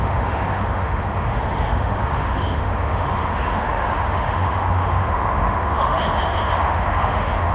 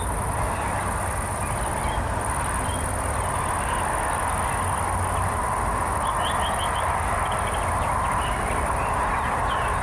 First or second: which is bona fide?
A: second